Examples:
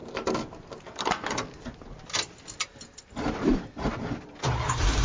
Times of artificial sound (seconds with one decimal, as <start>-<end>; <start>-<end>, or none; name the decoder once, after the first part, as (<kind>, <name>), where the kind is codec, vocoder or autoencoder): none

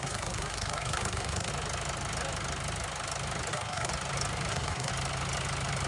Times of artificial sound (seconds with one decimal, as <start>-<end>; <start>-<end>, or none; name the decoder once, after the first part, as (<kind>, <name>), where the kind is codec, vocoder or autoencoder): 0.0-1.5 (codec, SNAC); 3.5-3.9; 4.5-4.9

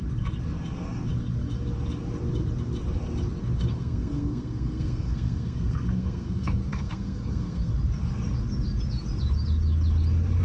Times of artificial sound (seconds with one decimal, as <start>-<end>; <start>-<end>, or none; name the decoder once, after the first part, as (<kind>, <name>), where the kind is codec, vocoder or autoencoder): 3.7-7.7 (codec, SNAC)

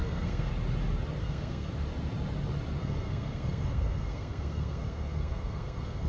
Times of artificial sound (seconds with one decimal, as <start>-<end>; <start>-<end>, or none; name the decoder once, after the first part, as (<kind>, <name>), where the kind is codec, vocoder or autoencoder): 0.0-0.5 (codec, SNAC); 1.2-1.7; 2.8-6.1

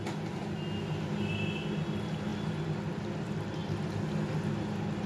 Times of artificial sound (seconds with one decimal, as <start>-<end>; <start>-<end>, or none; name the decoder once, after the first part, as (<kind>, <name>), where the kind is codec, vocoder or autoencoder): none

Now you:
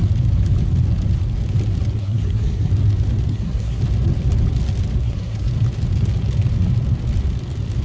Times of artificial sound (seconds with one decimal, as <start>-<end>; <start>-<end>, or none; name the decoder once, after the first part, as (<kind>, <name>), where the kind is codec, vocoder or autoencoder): 2.0-2.7 (codec, SNAC); 3.3-3.8; 5.0-5.5

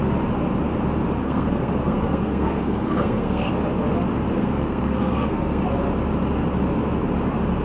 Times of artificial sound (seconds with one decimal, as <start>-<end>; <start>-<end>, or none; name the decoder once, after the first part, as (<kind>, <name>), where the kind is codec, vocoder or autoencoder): 1.2-3.5 (codec, SNAC); 4.4-5.6